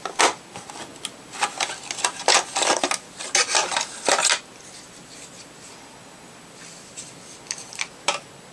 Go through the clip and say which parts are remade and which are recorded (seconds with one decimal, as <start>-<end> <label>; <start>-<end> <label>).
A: 0.0-8.5 recorded